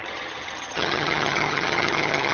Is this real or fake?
fake